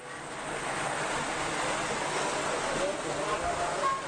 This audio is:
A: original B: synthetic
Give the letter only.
A